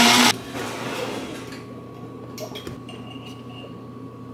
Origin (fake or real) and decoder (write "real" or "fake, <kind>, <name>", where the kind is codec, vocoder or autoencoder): real